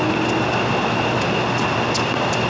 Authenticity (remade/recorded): recorded